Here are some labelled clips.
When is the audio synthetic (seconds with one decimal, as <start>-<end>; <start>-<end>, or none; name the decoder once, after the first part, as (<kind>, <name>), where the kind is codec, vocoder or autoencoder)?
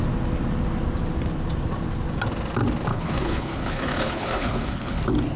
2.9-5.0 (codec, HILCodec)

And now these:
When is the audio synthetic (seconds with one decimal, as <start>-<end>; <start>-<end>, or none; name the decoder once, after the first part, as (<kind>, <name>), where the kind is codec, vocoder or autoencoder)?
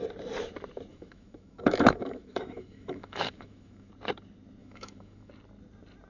0.9-3.9 (autoencoder, DAC-VAE); 4.6-5.3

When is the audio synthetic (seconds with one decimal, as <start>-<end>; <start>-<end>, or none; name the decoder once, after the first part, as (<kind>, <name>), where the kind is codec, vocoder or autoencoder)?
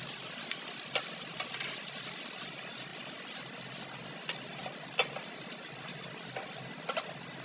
none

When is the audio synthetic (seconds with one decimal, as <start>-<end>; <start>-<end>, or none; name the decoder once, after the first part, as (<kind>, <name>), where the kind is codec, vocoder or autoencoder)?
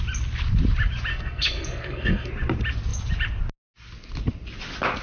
1.1-2.3 (codec, SNAC)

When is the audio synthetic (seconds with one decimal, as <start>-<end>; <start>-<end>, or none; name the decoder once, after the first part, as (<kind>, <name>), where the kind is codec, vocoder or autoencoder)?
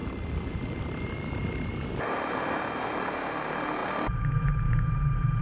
none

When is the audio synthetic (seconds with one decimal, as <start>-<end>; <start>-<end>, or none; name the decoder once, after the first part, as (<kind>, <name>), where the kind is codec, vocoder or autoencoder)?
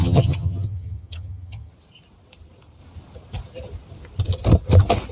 0.0-1.7 (vocoder, HiFi-GAN)